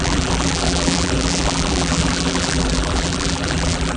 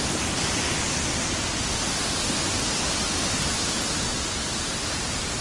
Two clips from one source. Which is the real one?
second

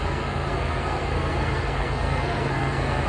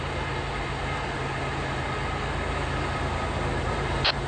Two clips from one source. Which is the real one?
second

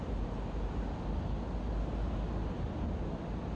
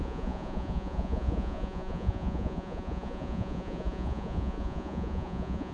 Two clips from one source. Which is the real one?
first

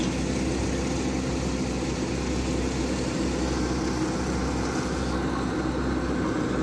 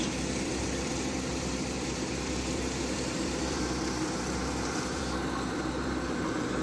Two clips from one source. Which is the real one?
first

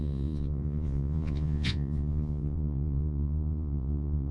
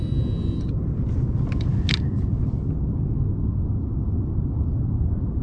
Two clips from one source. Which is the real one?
second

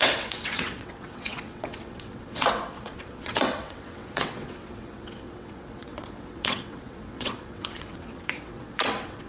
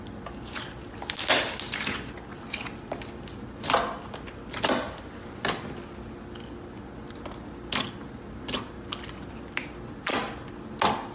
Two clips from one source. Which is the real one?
second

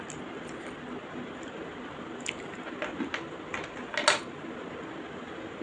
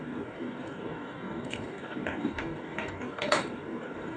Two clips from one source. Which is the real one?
first